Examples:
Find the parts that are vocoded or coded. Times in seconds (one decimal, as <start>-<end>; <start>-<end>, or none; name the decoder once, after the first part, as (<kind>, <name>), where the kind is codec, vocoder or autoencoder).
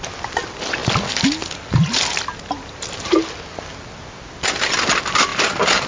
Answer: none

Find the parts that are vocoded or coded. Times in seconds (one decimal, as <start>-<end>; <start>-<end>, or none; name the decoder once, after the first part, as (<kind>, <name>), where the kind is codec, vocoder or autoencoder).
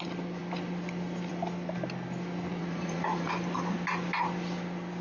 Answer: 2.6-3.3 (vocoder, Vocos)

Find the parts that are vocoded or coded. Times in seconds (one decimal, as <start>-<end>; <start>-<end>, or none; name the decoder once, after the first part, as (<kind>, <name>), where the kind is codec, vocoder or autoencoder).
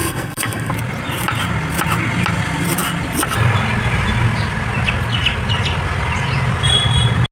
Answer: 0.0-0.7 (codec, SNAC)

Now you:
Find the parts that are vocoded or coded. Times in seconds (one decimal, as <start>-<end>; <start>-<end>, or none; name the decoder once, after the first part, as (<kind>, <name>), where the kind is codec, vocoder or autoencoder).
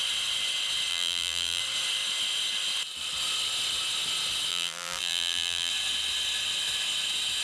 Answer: 0.9-1.6 (vocoder, BigVGAN v2); 4.5-5.7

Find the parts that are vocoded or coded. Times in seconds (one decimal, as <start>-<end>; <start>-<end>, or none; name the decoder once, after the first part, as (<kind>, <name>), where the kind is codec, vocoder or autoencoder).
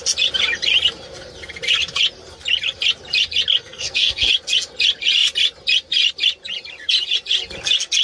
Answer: 3.6-4.3 (codec, SNAC)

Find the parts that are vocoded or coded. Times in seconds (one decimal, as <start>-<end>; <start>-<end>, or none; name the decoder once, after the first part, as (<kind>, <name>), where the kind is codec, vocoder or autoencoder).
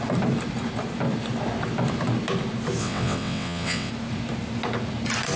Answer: 2.8-3.9 (vocoder, WaveNeXt)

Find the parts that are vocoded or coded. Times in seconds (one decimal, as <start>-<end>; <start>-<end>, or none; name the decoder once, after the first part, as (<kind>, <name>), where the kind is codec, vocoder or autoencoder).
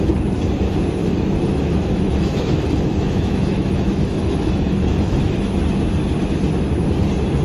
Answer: 1.0-5.4 (autoencoder, DAC-VAE)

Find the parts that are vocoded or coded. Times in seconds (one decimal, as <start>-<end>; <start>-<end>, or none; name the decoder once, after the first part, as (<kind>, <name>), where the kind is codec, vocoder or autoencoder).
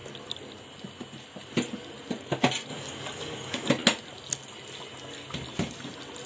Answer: 2.7-3.7 (codec, DAC)